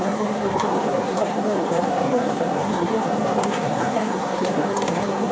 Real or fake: fake